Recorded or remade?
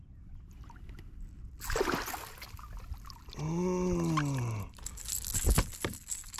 recorded